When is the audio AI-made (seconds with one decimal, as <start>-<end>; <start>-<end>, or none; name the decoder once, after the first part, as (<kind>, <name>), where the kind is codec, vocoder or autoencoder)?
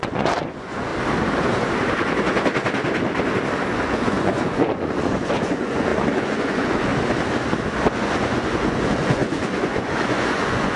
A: 0.0-0.9 (vocoder, Vocos); 3.7-6.9; 7.9-10.8